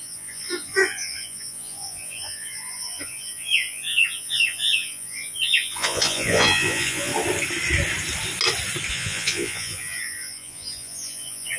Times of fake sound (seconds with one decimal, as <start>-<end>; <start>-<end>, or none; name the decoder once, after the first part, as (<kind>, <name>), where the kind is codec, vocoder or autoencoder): 0.0-7.1 (vocoder, Vocos); 8.9-11.6